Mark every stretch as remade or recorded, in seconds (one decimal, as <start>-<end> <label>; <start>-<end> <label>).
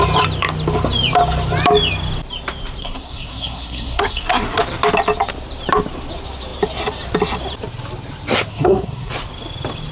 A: 0.0-2.8 recorded; 2.8-4.6 remade; 4.6-8.5 recorded; 8.5-9.1 remade; 9.1-9.9 recorded